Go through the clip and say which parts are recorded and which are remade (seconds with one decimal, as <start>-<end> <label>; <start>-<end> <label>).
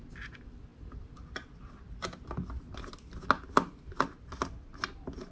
0.0-5.3 recorded